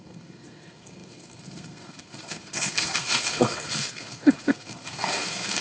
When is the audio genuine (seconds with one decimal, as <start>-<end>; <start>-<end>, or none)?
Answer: none